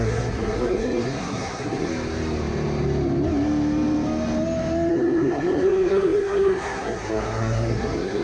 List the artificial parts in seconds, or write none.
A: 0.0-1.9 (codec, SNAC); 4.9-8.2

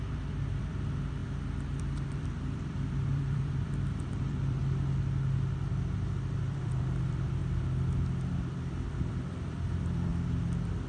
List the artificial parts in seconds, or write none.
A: 0.0-4.6 (vocoder, BigVGAN v2); 5.7-7.4; 8.3-10.1